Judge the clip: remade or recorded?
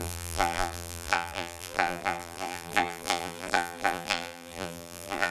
remade